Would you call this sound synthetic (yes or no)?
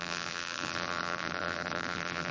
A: yes